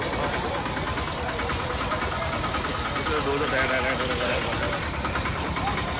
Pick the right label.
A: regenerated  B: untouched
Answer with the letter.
B